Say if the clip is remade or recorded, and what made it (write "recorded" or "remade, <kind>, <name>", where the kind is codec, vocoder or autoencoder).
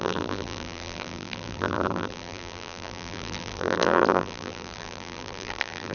remade, vocoder, BigVGAN v2